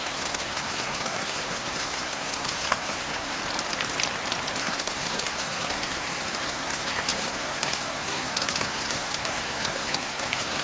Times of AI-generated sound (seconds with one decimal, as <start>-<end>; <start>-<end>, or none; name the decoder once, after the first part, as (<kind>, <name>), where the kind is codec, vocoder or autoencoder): 0.0-3.4 (codec, SNAC); 4.6-10.6